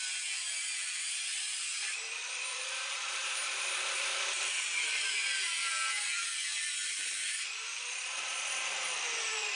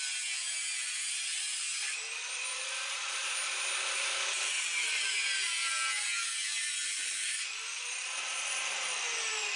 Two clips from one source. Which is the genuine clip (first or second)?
second